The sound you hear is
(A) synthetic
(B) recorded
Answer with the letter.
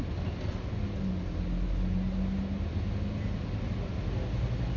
B